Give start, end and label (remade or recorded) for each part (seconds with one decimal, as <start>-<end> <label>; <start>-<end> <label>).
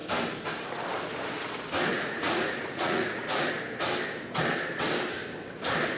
0.0-1.9 recorded; 1.9-3.5 remade; 3.5-6.0 recorded